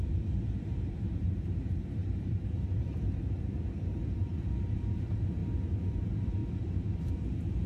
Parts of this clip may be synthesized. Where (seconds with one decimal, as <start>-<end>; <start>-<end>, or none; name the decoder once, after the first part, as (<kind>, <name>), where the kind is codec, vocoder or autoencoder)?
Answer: 0.0-5.4 (vocoder, BigVGAN v2); 6.0-7.7